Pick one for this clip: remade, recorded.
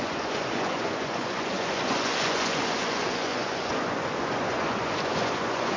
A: remade